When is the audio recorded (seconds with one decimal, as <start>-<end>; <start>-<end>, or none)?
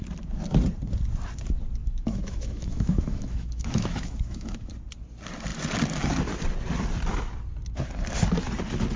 0.0-1.8; 4.7-9.0